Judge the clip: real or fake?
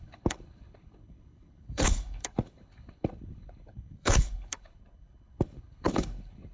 fake